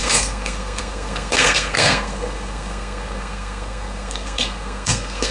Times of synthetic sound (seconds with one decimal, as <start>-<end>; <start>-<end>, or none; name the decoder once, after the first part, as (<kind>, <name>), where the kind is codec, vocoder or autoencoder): 0.0-5.3 (codec, SNAC)

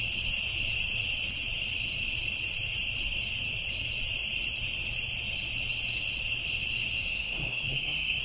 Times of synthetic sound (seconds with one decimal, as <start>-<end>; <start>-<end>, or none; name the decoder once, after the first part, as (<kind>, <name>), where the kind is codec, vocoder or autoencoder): 7.1-8.2 (codec, SNAC)

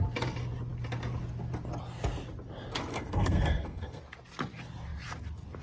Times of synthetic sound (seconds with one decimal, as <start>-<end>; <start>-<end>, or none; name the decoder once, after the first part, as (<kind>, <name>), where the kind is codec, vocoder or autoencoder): 2.9-4.0 (codec, SNAC)

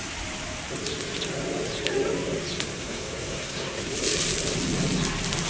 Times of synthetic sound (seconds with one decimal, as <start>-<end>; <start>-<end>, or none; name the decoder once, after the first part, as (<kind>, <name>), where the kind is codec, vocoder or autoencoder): 2.8-3.8 (codec, SNAC)

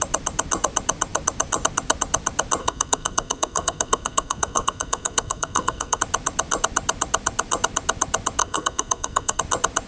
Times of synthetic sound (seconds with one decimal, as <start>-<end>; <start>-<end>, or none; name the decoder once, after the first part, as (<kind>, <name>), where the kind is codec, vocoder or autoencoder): 2.6-6.0 (codec, SNAC); 8.4-9.4

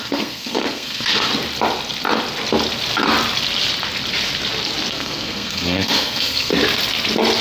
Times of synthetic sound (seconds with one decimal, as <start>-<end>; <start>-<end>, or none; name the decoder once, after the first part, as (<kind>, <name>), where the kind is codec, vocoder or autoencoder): 0.0-1.3 (codec, SNAC); 4.9-6.5

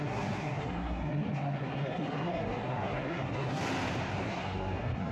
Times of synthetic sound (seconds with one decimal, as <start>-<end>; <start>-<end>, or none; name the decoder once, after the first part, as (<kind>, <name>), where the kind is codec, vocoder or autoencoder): 0.0-3.6 (codec, SNAC); 4.2-5.1